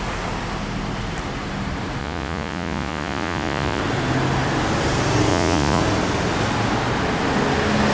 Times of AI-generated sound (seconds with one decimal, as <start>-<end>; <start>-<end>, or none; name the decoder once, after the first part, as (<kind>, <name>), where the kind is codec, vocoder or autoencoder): 2.0-3.8 (vocoder, Vocos); 5.3-5.8